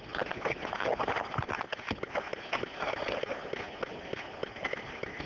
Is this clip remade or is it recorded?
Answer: recorded